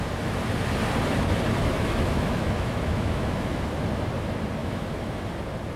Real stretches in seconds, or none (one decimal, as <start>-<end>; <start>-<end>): 0.0-1.6; 3.6-4.6; 5.2-5.8